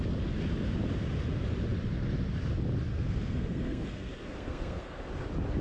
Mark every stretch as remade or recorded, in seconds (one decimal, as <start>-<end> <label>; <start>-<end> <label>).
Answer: 0.0-2.9 recorded; 2.9-5.1 remade; 5.1-5.6 recorded